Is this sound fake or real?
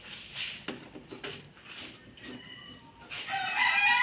real